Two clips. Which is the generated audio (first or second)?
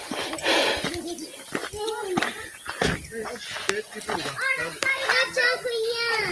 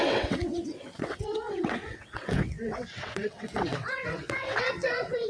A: second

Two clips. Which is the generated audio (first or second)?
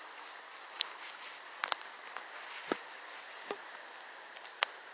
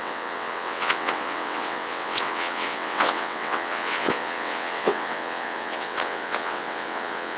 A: second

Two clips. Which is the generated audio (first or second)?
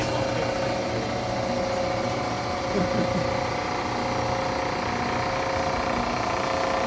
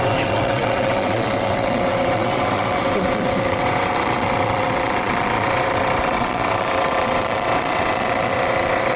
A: second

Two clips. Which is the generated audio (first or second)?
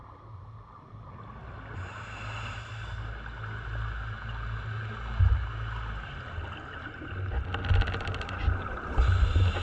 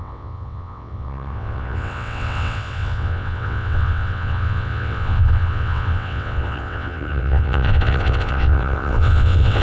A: second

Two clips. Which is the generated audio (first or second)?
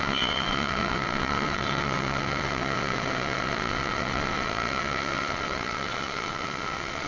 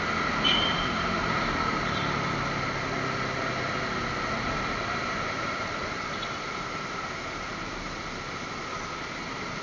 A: first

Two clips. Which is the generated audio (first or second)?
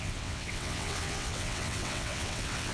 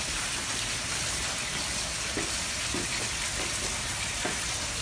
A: first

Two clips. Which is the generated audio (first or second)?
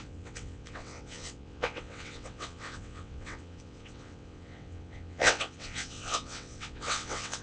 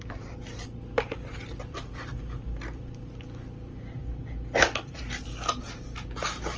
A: first